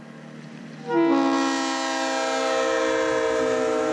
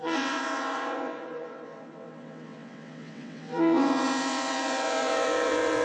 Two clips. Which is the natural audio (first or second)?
first